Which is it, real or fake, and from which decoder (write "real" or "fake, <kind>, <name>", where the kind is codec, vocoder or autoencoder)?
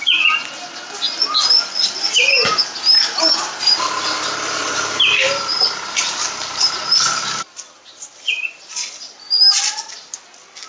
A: real